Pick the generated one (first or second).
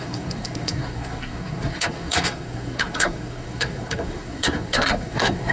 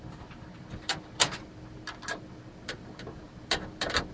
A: first